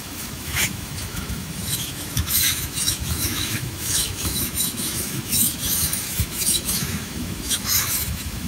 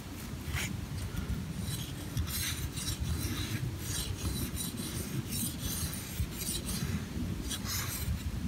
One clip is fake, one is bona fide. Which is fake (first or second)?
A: first